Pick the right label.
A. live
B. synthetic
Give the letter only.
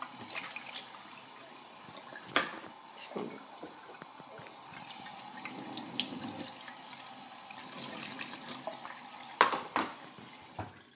A